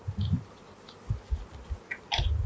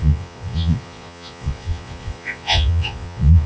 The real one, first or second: first